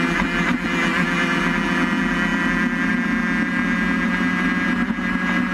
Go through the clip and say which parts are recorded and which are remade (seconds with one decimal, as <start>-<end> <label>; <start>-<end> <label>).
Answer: 0.0-0.9 recorded; 0.9-1.4 remade; 1.4-5.5 recorded